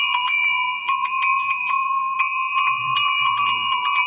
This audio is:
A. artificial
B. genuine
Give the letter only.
A